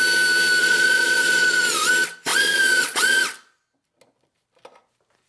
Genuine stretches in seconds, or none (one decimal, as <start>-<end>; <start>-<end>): 0.0-0.6; 1.9-2.3; 3.2-5.3